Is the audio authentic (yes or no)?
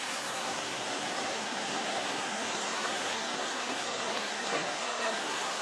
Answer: no